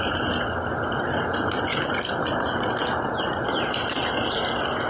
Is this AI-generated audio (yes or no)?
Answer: no